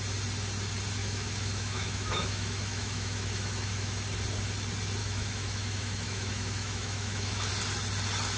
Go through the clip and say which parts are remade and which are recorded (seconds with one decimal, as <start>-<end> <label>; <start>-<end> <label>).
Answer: 0.0-1.0 recorded; 1.0-4.0 remade; 4.0-5.0 recorded; 5.0-7.5 remade; 7.5-8.4 recorded